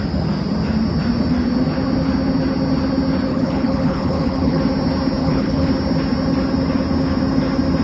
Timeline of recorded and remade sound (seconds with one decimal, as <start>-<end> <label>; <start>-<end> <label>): 0.0-3.3 recorded; 3.3-4.6 remade; 4.6-5.2 recorded; 5.2-5.7 remade; 5.7-7.8 recorded